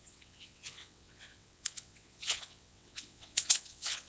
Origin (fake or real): fake